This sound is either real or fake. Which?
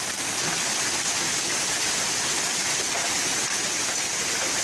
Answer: real